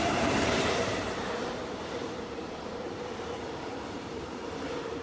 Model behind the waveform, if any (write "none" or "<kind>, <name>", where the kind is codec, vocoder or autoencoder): vocoder, BigVGAN v2